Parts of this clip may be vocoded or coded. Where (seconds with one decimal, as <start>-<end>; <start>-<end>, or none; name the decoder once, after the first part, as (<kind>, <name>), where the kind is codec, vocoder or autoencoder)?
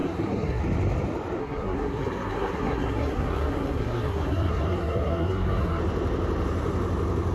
0.0-0.6 (codec, SNAC); 1.4-5.8